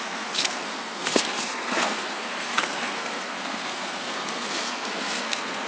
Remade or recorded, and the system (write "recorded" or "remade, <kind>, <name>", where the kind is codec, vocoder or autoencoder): remade, codec, SNAC